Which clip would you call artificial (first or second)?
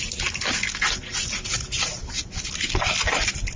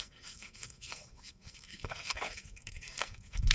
second